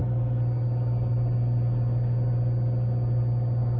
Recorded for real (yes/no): yes